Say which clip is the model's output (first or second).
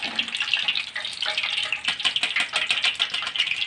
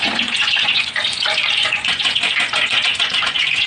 second